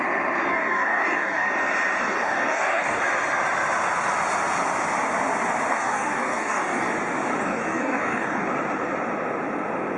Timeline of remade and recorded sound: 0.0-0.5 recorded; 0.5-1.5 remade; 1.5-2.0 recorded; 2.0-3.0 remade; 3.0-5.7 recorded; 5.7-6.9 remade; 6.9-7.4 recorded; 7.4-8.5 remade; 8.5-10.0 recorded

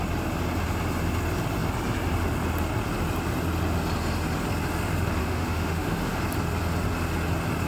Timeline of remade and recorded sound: 0.0-5.2 recorded; 5.2-6.1 remade; 6.1-7.7 recorded